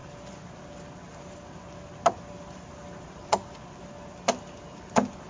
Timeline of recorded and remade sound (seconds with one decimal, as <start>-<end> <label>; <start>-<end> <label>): 0.0-5.3 recorded